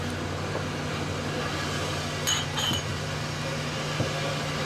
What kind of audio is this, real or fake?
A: real